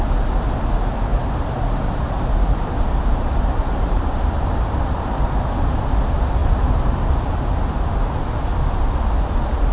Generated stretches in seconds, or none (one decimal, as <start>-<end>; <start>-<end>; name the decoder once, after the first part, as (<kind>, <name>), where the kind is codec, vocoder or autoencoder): 1.1-5.4 (vocoder, BigVGAN v2); 6.4-6.9